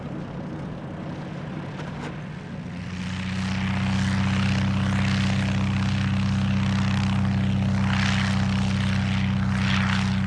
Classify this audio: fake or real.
real